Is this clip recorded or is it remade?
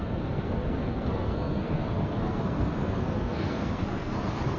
remade